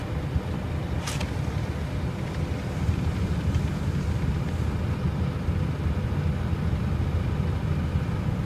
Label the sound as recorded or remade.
recorded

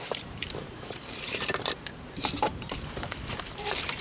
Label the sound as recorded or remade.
remade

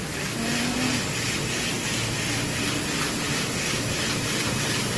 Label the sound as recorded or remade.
recorded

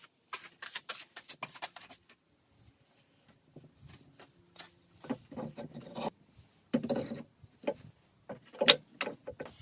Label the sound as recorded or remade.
recorded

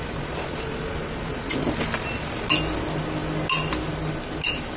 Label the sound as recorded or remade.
recorded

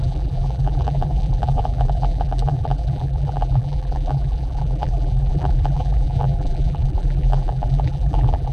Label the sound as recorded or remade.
remade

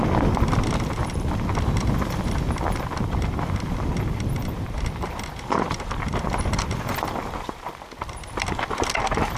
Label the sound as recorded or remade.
remade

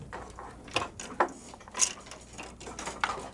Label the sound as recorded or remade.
recorded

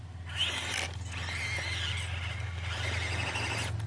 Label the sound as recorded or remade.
recorded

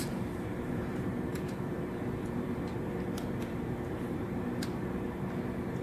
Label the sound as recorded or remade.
remade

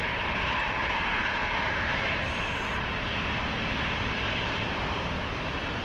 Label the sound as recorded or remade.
remade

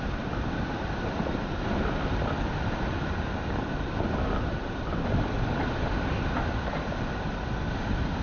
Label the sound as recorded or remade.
remade